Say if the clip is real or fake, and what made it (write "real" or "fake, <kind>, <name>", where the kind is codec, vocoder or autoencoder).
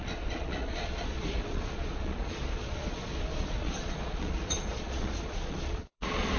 fake, vocoder, Vocos